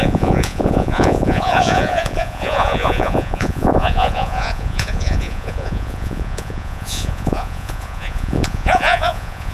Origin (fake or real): fake